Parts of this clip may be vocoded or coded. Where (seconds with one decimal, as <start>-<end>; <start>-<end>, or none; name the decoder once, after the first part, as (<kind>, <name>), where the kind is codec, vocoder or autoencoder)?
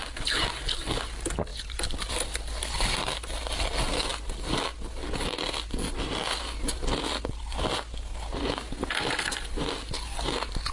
none